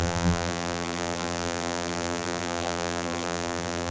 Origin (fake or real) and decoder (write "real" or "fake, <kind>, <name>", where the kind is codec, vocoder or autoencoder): fake, vocoder, BigVGAN v2